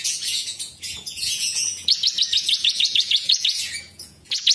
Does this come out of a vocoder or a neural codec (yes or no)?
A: yes